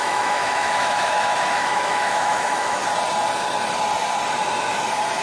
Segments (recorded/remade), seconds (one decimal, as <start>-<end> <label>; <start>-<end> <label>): 0.0-2.8 remade; 2.8-5.2 recorded